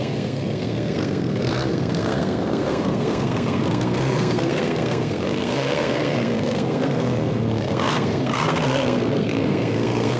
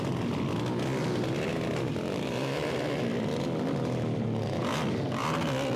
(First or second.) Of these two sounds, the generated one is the first